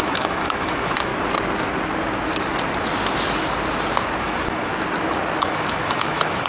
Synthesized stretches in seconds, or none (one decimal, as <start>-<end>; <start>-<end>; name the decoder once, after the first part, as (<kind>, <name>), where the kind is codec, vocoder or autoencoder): 0.0-1.1 (autoencoder, DAC-VAE); 4.2-4.7; 5.4-6.5